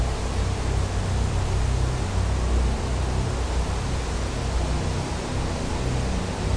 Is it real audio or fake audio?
real